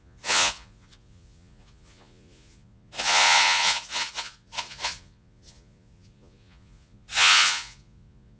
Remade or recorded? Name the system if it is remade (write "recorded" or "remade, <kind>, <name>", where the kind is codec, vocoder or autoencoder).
remade, vocoder, Vocos